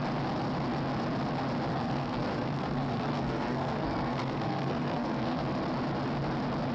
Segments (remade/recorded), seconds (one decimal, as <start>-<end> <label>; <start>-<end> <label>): 0.0-1.7 recorded; 1.7-5.4 remade; 5.4-6.7 recorded